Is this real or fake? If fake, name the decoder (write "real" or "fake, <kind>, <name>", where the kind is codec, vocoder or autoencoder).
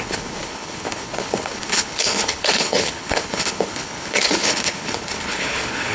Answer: fake, codec, HILCodec